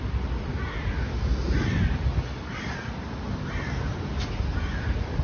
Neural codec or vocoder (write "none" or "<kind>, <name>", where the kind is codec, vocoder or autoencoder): none